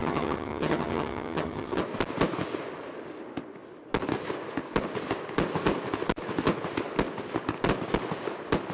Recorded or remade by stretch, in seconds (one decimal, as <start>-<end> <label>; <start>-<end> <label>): 0.0-1.8 remade; 1.8-8.7 recorded